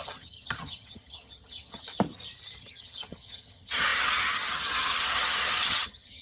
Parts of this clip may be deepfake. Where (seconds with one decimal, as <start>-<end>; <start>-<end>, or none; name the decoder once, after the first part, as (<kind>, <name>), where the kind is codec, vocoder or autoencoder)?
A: 0.0-1.9 (vocoder, HiFi-GAN); 2.6-6.2